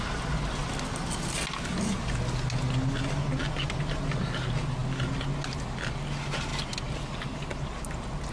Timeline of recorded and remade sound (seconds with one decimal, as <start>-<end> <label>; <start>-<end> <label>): 0.0-8.3 recorded